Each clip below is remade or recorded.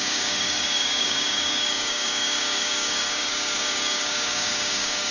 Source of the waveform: remade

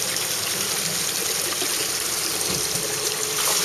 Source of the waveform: recorded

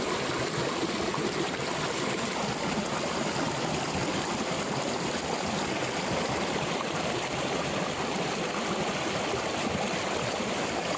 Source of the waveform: recorded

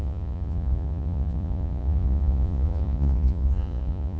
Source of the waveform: remade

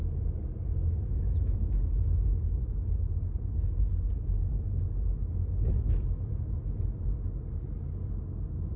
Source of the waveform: recorded